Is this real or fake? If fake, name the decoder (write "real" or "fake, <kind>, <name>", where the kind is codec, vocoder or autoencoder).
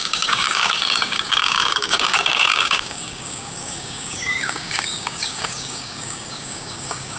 fake, codec, DAC